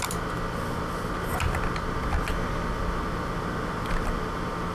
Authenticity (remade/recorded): recorded